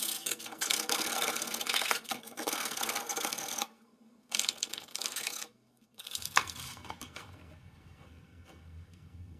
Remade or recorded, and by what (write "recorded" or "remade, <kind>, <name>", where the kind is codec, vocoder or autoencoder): remade, codec, SNAC